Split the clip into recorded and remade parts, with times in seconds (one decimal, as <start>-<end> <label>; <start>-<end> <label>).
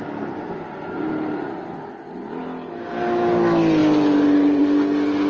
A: 0.0-5.3 recorded